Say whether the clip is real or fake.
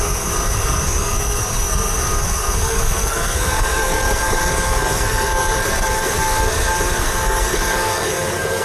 fake